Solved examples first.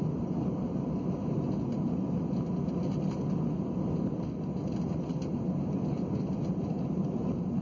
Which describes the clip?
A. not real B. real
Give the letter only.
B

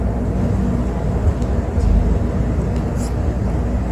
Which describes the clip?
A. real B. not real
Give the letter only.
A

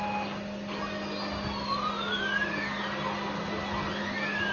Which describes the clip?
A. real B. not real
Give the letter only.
A